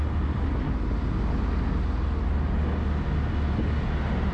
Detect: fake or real real